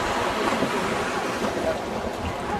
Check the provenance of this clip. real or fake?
real